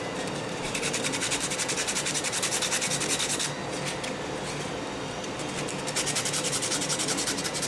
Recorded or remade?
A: recorded